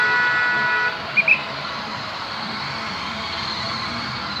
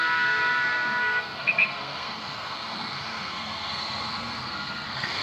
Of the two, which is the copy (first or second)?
second